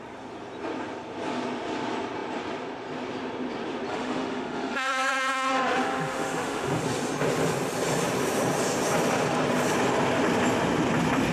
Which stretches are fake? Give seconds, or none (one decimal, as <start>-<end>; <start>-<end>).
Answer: 3.9-6.8